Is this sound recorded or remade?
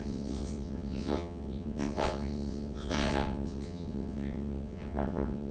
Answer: remade